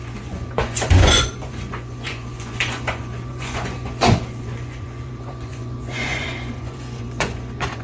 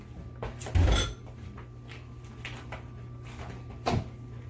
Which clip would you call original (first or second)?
second